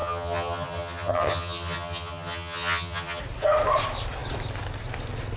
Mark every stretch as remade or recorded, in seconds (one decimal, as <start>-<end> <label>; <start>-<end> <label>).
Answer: 0.0-3.2 remade; 3.2-5.4 recorded